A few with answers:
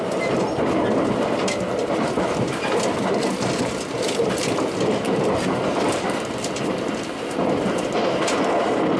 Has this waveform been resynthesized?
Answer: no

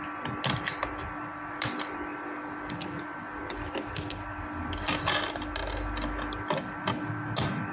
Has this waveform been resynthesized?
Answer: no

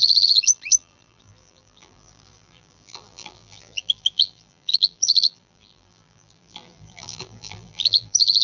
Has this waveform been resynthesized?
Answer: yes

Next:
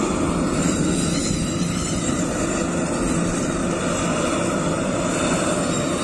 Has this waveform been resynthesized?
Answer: no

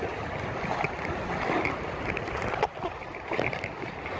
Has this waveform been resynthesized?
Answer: no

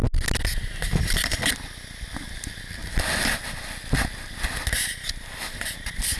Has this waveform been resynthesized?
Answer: no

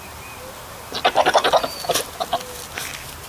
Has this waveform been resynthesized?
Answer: no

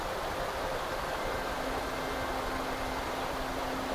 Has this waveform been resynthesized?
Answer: no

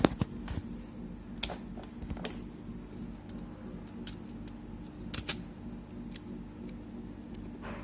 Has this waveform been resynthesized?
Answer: no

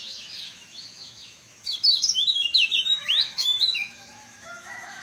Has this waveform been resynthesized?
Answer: yes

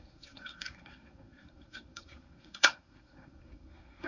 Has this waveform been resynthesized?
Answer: yes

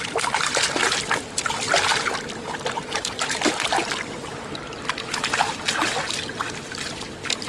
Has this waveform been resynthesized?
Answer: no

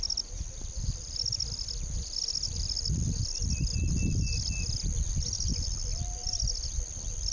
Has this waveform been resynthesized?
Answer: no